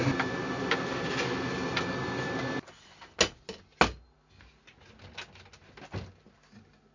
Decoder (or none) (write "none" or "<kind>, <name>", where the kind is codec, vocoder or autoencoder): none